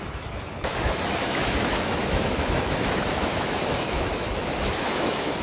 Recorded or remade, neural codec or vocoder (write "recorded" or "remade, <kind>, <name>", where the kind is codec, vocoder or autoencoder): remade, autoencoder, DAC-VAE